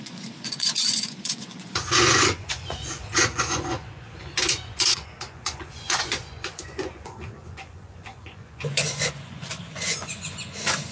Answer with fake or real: fake